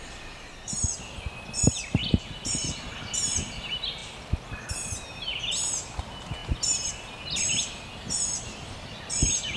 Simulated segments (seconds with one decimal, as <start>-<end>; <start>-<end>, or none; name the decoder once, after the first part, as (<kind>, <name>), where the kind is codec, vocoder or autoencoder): none